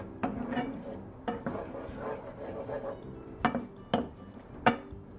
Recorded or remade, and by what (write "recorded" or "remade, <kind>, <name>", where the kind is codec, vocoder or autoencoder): recorded